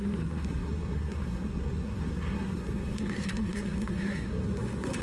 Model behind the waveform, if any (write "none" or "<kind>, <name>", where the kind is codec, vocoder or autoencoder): codec, SNAC